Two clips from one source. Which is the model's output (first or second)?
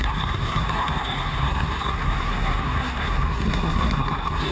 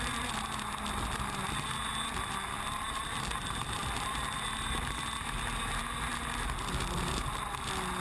first